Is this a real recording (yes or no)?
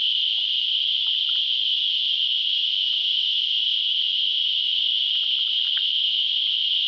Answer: yes